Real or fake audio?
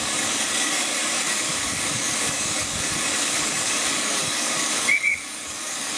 fake